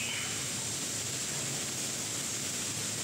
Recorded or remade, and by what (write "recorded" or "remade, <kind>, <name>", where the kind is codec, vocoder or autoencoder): recorded